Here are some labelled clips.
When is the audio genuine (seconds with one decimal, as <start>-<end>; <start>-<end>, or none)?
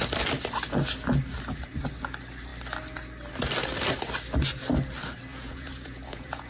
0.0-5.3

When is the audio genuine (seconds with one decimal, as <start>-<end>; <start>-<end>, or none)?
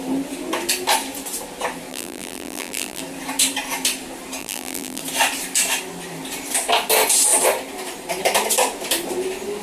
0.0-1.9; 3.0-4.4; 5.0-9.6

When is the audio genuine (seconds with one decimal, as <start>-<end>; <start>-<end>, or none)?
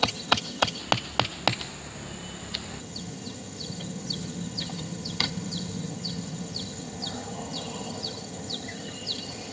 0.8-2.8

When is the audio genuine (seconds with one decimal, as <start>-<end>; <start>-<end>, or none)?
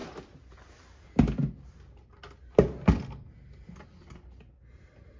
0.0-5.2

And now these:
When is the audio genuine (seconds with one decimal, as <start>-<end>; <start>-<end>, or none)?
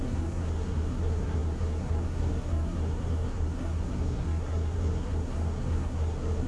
none